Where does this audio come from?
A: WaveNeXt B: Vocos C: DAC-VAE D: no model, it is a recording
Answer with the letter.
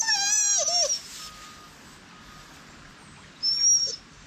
D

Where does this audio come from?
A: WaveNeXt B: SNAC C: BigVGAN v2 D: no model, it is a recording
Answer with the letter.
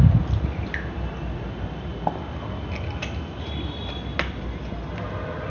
D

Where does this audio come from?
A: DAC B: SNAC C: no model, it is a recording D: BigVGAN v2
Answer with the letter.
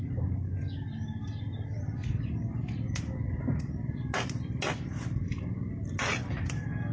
C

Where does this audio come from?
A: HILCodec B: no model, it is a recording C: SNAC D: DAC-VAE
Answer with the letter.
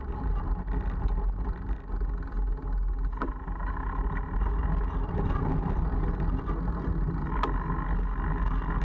B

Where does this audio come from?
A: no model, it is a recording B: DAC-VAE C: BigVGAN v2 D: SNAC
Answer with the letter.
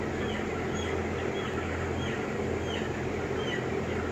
A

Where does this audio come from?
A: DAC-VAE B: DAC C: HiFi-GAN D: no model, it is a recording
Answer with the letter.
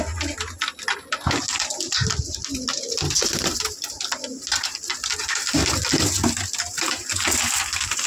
D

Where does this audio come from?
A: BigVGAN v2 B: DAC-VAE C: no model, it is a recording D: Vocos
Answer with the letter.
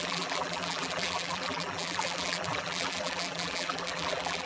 A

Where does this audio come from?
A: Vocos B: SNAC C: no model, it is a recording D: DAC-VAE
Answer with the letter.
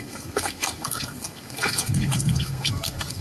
B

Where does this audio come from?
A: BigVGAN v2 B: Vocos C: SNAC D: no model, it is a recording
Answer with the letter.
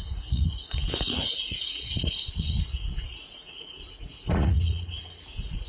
B